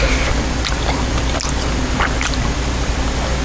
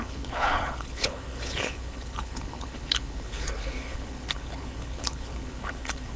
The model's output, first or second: second